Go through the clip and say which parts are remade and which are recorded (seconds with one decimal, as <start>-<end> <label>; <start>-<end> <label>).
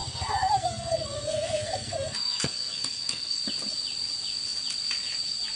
0.0-3.4 remade; 3.4-5.6 recorded